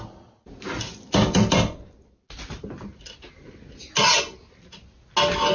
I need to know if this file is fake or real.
real